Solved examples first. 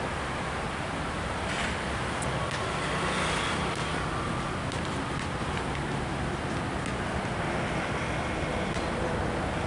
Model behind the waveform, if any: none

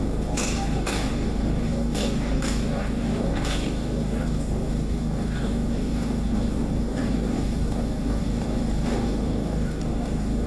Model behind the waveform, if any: codec, DAC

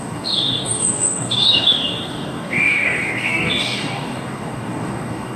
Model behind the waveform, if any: codec, DAC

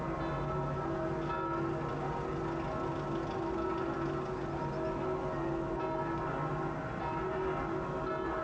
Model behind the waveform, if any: none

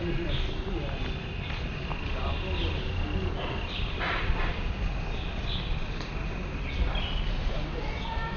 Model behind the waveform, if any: none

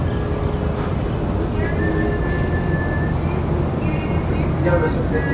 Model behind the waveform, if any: none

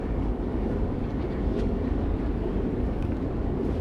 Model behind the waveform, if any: codec, DAC